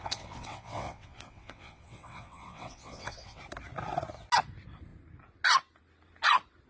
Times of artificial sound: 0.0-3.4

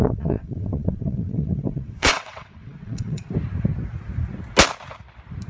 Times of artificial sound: 0.0-3.3

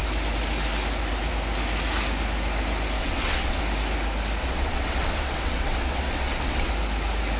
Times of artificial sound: 3.0-3.6; 4.4-6.7

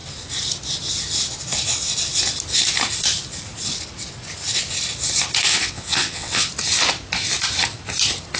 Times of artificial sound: 5.5-6.5

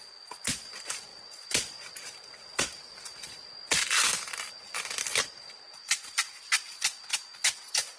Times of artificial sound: none

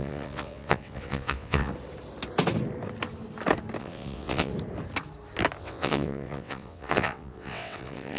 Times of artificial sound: 0.0-1.7; 3.8-4.5; 5.6-8.2